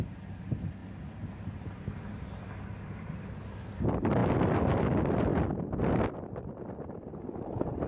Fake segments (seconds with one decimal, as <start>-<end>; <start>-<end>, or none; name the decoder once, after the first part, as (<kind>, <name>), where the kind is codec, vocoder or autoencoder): none